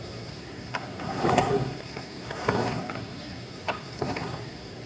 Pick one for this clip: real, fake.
fake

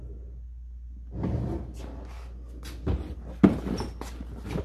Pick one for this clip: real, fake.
real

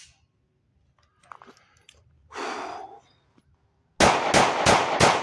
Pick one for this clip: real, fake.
real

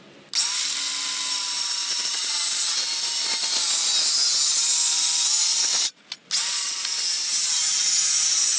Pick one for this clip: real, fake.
real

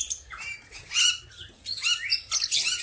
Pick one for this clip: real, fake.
real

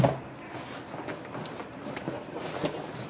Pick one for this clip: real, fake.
real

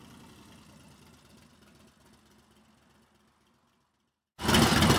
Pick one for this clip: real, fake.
real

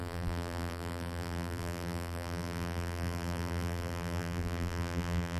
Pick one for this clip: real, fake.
fake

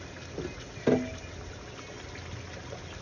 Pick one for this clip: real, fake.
real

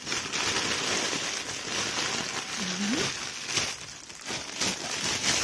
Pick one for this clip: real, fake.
real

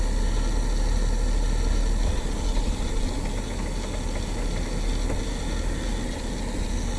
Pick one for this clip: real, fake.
real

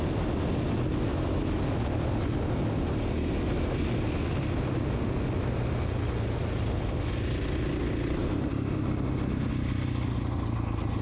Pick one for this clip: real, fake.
real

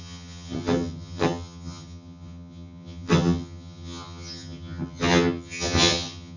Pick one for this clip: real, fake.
fake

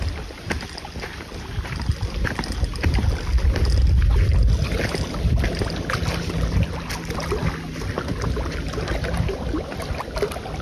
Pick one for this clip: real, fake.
real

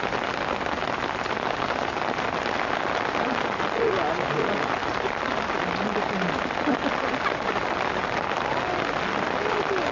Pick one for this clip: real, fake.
real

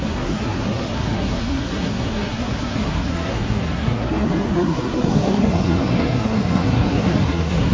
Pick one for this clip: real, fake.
fake